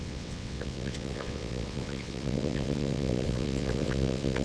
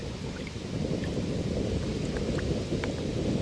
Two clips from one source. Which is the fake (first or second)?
first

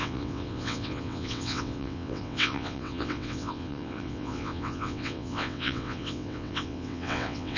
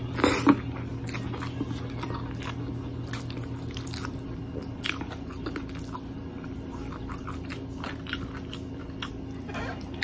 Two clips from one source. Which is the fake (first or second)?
first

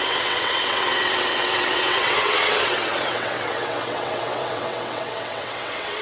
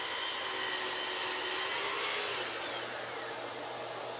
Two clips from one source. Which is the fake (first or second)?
first